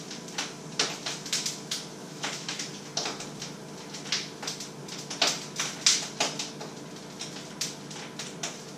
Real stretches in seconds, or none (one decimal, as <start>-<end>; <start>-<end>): 0.0-2.0; 2.6-8.8